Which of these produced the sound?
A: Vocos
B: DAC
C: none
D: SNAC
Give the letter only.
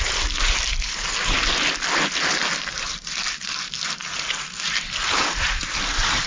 C